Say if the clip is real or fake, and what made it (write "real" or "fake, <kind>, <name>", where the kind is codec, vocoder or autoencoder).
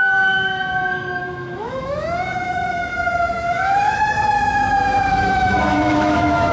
fake, autoencoder, DAC-VAE